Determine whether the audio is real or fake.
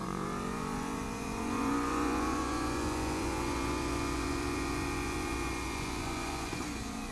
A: fake